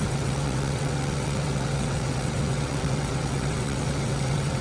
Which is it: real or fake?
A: fake